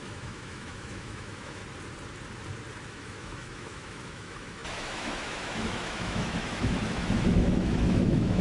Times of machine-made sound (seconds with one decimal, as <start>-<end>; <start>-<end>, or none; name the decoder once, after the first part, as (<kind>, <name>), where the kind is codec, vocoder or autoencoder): 0.0-1.6 (autoencoder, DAC-VAE); 2.9-8.4